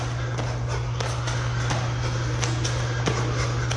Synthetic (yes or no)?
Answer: no